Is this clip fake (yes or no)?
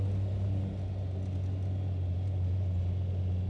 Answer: no